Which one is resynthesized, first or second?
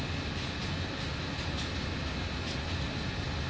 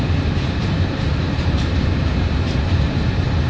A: second